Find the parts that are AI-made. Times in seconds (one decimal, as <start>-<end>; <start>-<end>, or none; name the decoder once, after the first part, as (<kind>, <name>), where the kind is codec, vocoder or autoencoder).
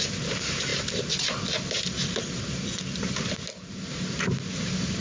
none